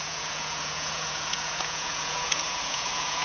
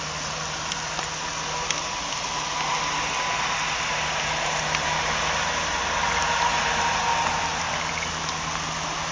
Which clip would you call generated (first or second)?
first